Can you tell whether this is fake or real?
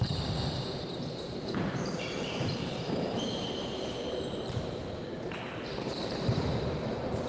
fake